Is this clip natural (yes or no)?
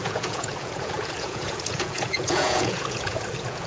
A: no